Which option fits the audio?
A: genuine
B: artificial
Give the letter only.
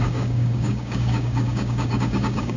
B